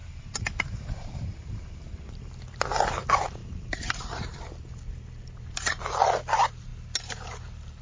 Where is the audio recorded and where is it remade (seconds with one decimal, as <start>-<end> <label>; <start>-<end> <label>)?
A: 0.0-2.6 remade; 2.6-3.4 recorded; 3.4-4.4 remade; 4.4-7.8 recorded